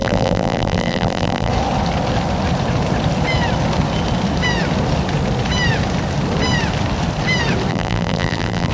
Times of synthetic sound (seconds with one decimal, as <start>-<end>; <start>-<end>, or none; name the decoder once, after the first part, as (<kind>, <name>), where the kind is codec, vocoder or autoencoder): 0.0-1.5 (vocoder, BigVGAN v2); 7.7-8.7